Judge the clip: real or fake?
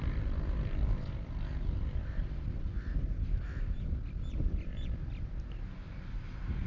real